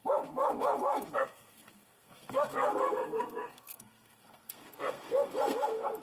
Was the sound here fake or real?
fake